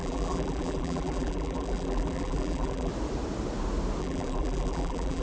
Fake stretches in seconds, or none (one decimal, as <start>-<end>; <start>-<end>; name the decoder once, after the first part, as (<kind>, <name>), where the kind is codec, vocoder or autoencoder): 0.0-2.9 (vocoder, BigVGAN v2); 4.0-5.2